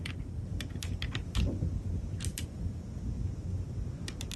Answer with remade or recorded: recorded